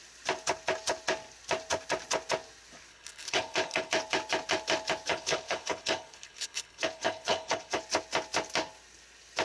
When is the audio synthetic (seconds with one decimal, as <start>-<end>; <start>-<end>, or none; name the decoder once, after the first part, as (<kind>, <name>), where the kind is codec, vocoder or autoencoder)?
2.9-3.9 (codec, HILCodec); 5.1-7.8